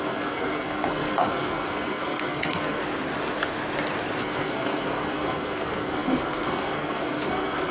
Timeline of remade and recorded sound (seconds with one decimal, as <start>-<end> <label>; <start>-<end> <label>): 0.0-2.8 remade; 2.8-4.2 recorded; 4.2-7.7 remade